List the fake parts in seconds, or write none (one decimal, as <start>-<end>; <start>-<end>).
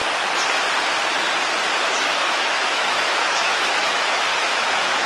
1.8-5.1